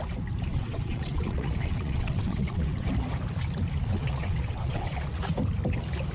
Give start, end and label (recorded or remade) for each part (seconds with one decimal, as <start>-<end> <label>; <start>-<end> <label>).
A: 0.0-0.5 recorded; 0.5-2.9 remade; 2.9-3.9 recorded; 3.9-5.2 remade; 5.2-6.1 recorded

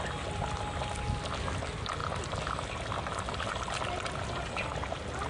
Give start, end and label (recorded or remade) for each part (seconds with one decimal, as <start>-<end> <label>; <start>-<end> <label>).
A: 0.0-5.3 recorded